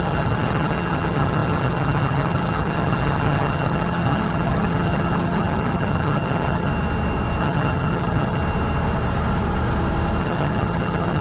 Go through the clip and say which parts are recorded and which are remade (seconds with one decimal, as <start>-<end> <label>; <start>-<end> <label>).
0.0-6.7 remade; 6.7-7.4 recorded; 7.4-8.4 remade; 8.4-10.2 recorded; 10.2-11.2 remade